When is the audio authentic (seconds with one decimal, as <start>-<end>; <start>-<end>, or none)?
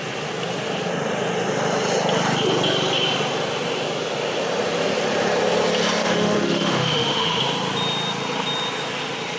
0.0-6.0; 7.4-9.4